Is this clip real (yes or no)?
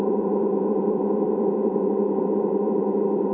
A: no